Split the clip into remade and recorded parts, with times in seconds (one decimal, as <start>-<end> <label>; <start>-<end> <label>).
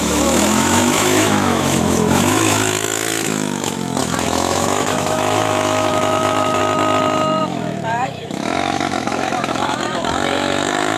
0.0-6.6 remade; 6.6-7.4 recorded; 7.4-11.0 remade